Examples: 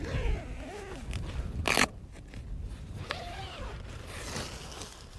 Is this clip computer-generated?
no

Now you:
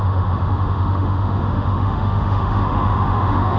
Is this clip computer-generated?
yes